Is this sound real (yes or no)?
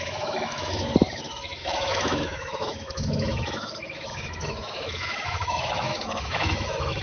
no